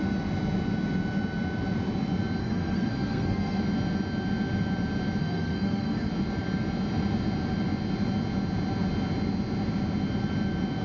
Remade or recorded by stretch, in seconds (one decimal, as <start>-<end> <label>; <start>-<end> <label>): 0.0-2.4 recorded; 2.4-3.6 remade; 3.6-5.2 recorded; 5.2-6.1 remade; 6.1-10.8 recorded